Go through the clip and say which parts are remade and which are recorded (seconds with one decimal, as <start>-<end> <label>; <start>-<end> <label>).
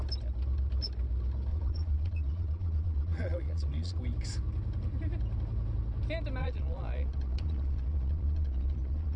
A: 0.0-1.5 recorded; 1.5-4.0 remade; 4.0-6.4 recorded; 6.4-9.2 remade